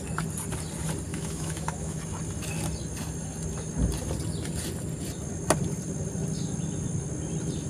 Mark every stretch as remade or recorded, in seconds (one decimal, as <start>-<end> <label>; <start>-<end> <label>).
0.0-1.1 recorded; 1.1-2.0 remade; 2.0-7.7 recorded